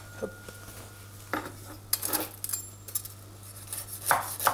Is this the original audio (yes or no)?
yes